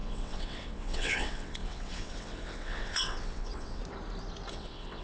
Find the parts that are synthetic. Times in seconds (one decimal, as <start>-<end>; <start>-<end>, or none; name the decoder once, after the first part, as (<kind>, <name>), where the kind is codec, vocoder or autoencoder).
0.0-3.8 (vocoder, WaveNeXt); 4.5-5.0